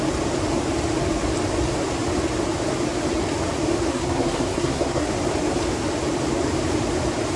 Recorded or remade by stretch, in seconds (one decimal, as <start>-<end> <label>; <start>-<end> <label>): 0.0-3.9 recorded; 3.9-5.1 remade; 5.1-7.4 recorded

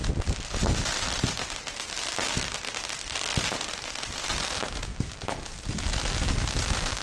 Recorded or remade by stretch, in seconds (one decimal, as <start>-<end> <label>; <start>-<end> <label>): 0.0-7.0 recorded

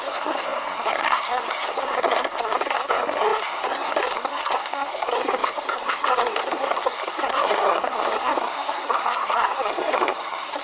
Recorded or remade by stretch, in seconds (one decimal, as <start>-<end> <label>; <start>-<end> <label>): 0.0-10.6 remade

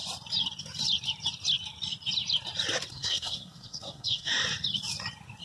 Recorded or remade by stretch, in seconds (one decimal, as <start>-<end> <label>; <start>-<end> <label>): 0.0-2.9 recorded; 2.9-4.3 remade; 4.3-5.4 recorded

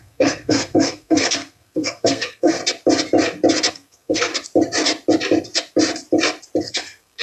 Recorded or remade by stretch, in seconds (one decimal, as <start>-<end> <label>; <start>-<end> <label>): 0.0-2.6 remade; 2.6-3.7 recorded; 3.7-4.3 remade; 4.3-6.6 recorded; 6.6-7.2 remade

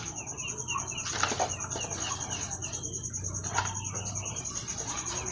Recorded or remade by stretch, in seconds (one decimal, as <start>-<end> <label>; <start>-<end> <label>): 0.0-5.3 recorded